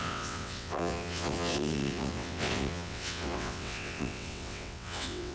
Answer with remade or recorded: remade